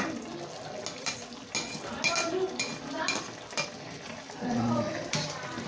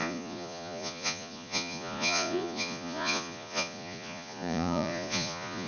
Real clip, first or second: first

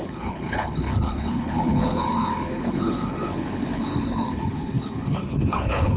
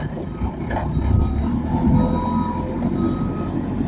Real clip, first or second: second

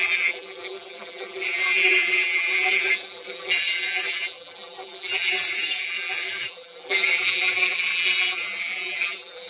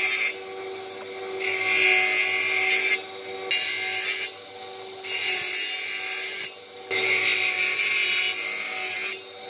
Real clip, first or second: second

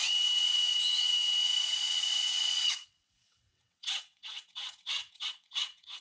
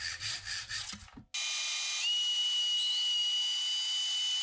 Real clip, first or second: second